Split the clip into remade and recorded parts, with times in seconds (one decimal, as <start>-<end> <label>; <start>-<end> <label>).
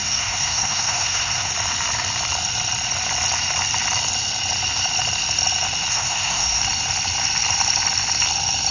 0.0-1.5 remade; 1.5-5.9 recorded; 5.9-6.6 remade; 6.6-8.7 recorded